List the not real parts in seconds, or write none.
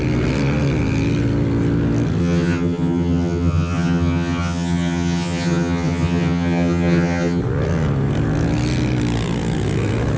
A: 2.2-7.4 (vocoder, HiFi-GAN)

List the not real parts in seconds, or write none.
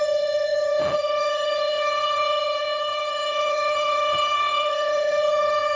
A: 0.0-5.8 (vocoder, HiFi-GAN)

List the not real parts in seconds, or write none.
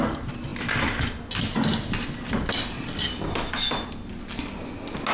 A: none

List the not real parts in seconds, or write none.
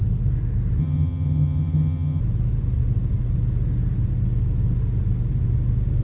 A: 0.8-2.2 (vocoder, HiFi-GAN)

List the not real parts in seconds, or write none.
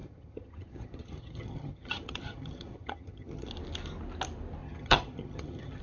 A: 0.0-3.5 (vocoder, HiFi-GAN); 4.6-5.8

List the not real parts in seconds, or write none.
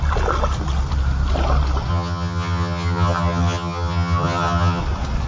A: 1.9-4.8 (vocoder, HiFi-GAN)